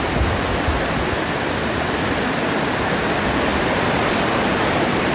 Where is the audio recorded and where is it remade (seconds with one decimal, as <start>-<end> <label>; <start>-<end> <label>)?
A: 0.0-1.6 recorded; 1.6-2.2 remade; 2.2-3.5 recorded; 3.5-5.1 remade